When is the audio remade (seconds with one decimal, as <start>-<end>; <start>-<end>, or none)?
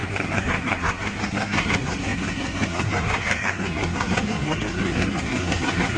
0.0-6.0